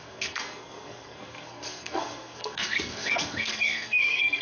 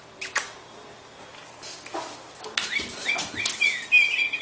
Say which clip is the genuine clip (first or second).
second